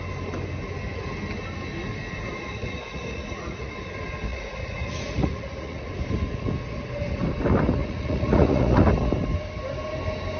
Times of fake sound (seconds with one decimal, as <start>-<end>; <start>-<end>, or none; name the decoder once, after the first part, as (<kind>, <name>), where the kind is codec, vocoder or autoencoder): 2.6-3.7 (vocoder, Vocos); 4.3-5.9; 7.8-8.8